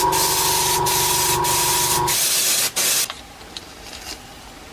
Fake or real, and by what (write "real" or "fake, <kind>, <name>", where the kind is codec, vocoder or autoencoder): real